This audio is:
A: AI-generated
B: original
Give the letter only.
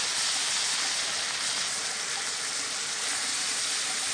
B